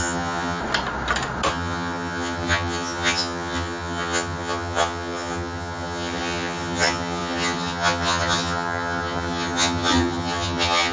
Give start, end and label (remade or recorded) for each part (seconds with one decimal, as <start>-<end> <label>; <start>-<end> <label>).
0.0-0.6 remade; 0.6-1.5 recorded; 1.5-10.9 remade